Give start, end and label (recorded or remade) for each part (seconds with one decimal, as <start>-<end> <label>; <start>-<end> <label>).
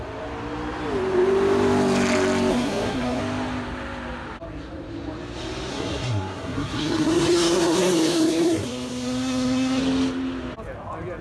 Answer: 0.0-2.5 recorded; 2.5-3.2 remade; 3.2-5.7 recorded; 5.7-9.8 remade; 9.8-11.2 recorded